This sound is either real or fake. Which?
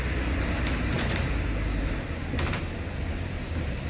real